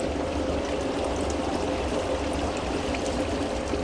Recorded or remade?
recorded